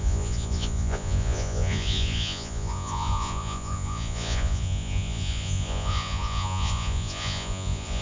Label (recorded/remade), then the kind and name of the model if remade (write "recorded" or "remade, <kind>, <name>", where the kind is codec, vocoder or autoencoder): remade, vocoder, Vocos